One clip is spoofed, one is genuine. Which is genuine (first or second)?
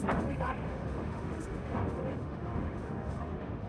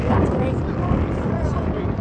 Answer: second